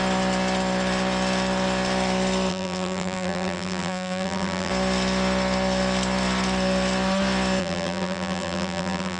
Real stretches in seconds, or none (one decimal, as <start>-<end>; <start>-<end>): 0.0-2.5; 4.7-7.6